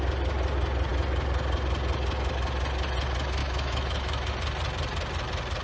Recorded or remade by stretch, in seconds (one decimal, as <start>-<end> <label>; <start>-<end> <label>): 0.0-3.4 recorded; 3.4-4.3 remade; 4.3-5.6 recorded